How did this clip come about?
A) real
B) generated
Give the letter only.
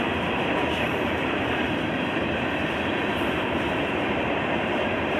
B